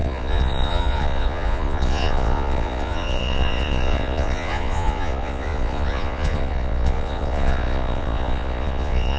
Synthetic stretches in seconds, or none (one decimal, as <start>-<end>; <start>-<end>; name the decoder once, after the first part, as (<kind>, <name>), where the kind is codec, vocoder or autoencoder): 0.0-9.2 (vocoder, Vocos)